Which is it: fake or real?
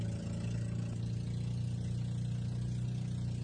real